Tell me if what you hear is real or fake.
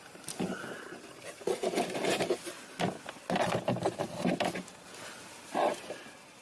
real